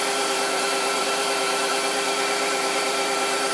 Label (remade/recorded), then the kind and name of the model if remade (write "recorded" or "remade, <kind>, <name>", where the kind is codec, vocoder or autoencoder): remade, vocoder, BigVGAN v2